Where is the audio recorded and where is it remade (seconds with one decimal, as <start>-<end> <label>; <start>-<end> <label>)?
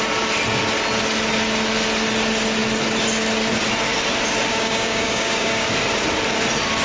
0.0-4.5 recorded; 4.5-5.7 remade; 5.7-6.8 recorded